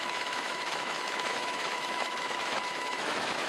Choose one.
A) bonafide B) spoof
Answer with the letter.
B